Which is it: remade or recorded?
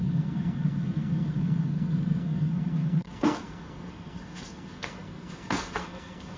remade